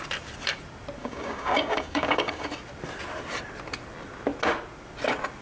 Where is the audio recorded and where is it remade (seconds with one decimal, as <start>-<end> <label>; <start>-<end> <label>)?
0.0-1.0 recorded; 1.0-2.5 remade; 2.5-5.4 recorded